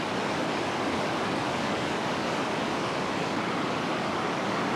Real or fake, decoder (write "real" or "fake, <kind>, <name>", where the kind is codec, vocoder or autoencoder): fake, codec, DAC